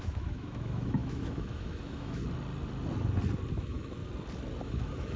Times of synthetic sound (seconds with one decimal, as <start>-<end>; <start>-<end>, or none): 0.0-2.2; 3.5-4.0; 4.6-5.2

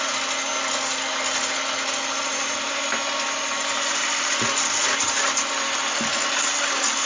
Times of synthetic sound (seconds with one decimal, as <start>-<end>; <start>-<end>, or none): none

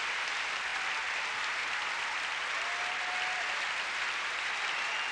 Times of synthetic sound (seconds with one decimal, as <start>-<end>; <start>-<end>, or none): none

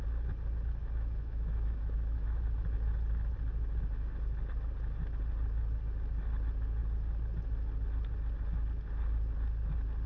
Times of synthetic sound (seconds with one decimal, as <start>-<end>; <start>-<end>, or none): 0.8-2.4

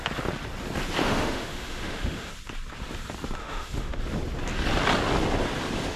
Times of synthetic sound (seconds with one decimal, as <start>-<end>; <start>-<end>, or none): 1.0-2.3; 3.4-4.0

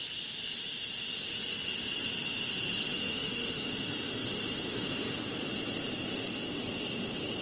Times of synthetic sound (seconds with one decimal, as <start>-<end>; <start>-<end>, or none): 2.9-3.7